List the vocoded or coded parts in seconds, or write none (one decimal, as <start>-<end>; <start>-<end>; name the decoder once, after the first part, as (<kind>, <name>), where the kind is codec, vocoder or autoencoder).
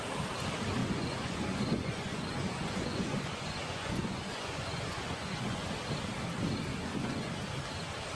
0.8-5.7 (vocoder, Vocos); 6.7-7.3